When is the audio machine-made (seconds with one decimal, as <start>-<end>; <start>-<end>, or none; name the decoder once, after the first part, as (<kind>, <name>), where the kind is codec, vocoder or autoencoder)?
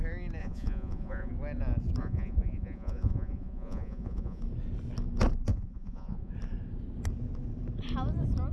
0.4-1.3 (vocoder, Vocos); 2.0-4.4; 5.5-6.3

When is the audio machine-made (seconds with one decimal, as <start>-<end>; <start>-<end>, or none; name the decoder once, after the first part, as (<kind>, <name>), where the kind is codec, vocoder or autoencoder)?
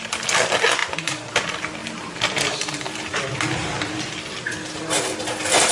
0.8-1.3 (vocoder, Vocos)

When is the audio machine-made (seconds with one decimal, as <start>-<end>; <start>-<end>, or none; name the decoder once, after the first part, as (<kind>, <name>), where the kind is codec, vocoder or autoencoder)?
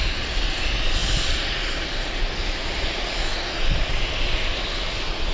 none